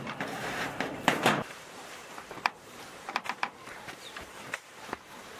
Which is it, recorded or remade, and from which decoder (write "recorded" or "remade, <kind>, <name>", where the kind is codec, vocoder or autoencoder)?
remade, vocoder, BigVGAN v2